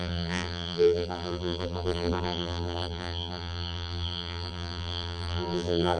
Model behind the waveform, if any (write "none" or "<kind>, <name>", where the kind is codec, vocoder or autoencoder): vocoder, BigVGAN v2